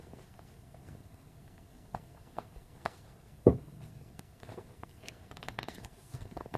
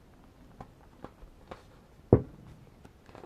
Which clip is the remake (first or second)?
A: first